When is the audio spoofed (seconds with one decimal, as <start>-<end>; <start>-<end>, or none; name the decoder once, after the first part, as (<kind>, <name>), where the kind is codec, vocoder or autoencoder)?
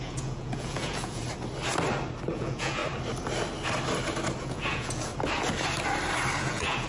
0.0-1.2 (vocoder, Vocos); 2.3-2.8; 4.4-5.1; 6.4-6.9